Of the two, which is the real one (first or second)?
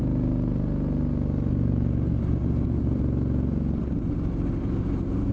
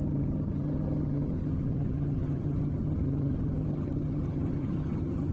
first